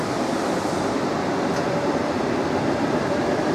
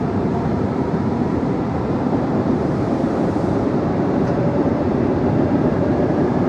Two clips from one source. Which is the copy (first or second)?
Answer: second